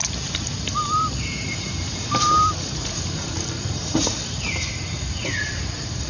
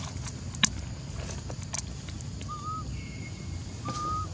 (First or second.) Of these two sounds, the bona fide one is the second